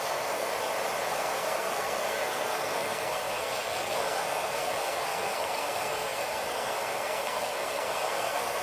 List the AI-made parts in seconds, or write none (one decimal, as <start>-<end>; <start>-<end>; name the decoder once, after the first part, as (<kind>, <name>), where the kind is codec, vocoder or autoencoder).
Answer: 0.0-0.5 (codec, SNAC); 1.1-8.6